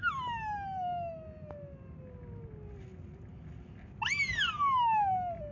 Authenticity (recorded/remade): recorded